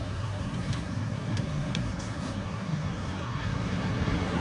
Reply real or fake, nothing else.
fake